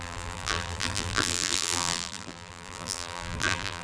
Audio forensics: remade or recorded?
remade